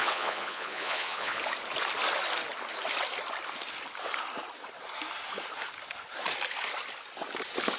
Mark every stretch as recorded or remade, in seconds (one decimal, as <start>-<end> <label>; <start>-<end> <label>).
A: 0.0-1.4 remade; 1.4-7.8 recorded